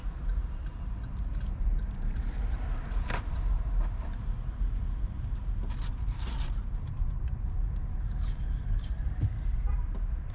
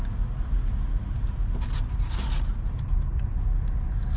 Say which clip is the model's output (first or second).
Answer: first